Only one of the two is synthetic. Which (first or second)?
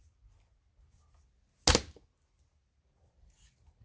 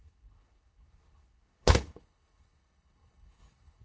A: second